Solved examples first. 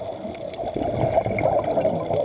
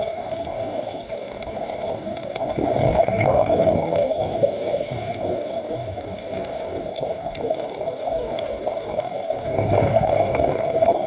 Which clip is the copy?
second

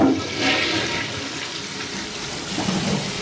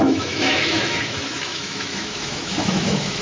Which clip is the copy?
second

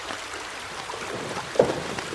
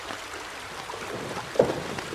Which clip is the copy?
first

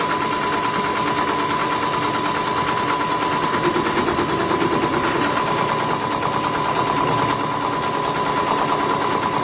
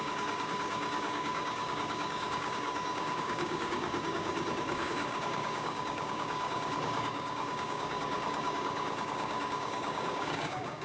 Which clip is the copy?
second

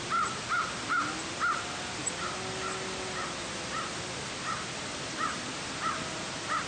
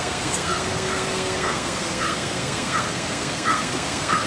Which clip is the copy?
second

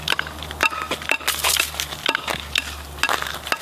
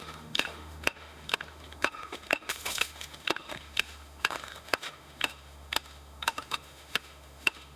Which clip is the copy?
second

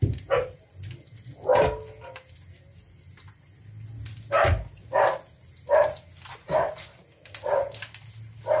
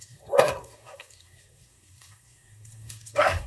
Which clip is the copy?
second